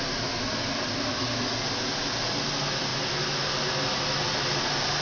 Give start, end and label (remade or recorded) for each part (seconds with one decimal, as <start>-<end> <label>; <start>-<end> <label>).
0.0-2.9 recorded; 2.9-3.5 remade; 3.5-5.0 recorded